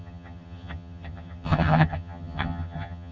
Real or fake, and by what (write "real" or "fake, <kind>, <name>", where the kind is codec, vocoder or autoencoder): fake, vocoder, HiFi-GAN